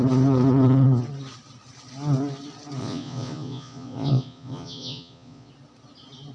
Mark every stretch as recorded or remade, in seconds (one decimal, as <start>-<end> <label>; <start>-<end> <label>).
0.0-2.8 recorded; 2.8-5.5 remade; 5.5-6.3 recorded